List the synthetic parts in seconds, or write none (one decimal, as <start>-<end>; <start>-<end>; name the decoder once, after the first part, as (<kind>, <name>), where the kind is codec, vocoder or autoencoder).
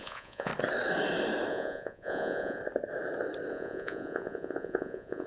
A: 0.0-0.5 (vocoder, Vocos); 1.5-2.6; 3.5-5.3